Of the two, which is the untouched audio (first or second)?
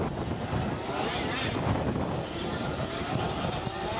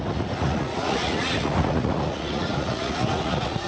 first